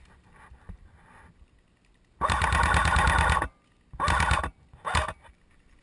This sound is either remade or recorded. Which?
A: recorded